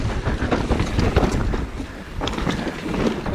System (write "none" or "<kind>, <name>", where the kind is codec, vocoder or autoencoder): none